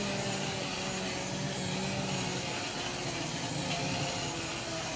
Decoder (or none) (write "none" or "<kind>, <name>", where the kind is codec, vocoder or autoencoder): none